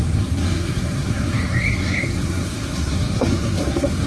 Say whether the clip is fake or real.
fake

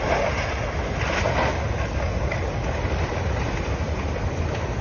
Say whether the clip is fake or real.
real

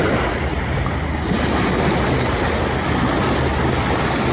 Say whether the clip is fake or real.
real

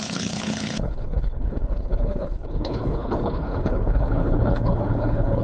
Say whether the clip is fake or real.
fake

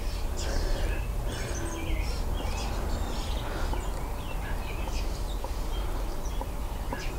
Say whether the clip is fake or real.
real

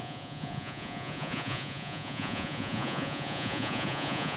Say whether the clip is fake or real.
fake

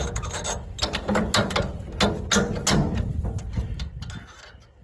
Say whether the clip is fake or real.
real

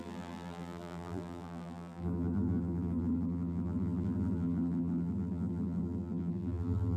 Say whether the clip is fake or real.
fake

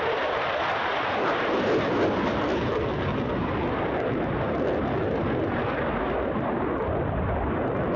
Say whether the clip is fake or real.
real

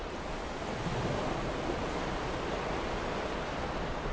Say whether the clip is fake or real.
real